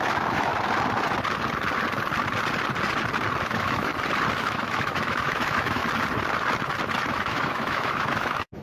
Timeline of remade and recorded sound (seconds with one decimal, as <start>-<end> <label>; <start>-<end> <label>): 0.0-0.5 remade; 0.5-3.4 recorded; 3.4-3.9 remade; 3.9-4.4 recorded; 4.4-5.8 remade; 5.8-7.1 recorded; 7.1-8.6 remade